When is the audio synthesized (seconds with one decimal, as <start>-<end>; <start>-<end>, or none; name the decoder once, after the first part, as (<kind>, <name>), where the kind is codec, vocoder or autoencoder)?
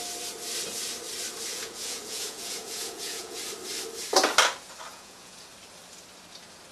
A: 1.5-3.4 (vocoder, Vocos); 4.9-5.5